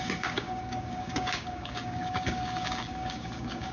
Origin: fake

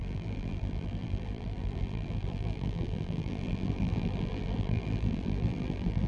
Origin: fake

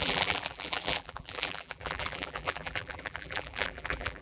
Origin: fake